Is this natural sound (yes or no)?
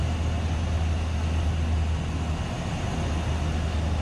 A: yes